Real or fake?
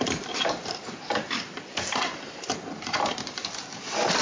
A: fake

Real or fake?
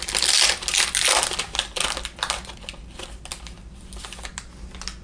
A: real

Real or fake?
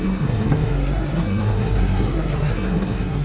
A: fake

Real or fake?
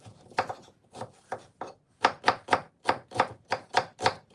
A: real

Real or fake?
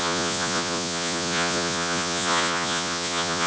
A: fake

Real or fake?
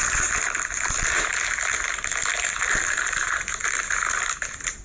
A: real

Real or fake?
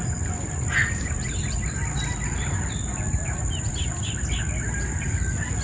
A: real